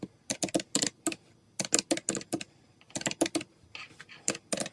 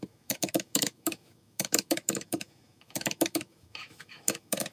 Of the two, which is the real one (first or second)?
first